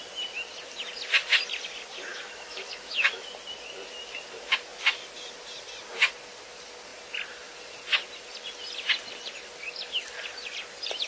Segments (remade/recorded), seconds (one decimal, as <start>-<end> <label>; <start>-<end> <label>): 0.0-2.1 recorded; 2.1-3.3 remade; 3.3-11.1 recorded